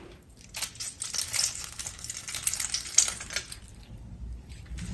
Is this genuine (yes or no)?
yes